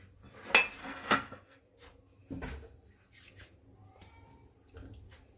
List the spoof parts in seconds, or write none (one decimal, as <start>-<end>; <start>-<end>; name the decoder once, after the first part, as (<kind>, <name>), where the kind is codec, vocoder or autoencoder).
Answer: 0.8-1.6 (codec, SNAC)